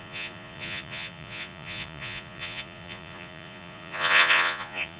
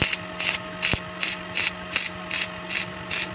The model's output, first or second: first